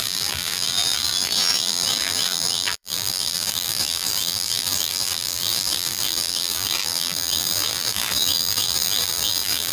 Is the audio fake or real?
fake